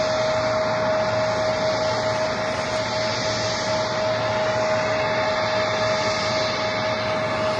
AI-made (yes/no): no